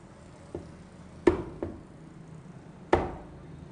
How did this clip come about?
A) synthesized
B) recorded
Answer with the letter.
B